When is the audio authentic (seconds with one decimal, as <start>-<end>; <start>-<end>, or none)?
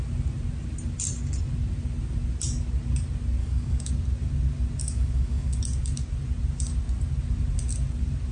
0.0-3.4; 3.9-4.8; 5.6-8.3